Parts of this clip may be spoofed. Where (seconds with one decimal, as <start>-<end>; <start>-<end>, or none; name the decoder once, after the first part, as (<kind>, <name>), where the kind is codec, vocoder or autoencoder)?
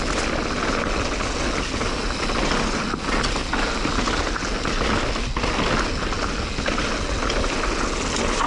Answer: none